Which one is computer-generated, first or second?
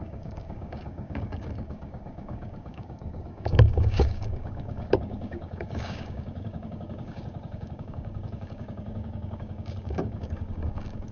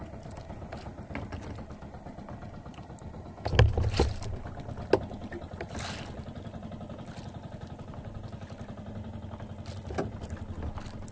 first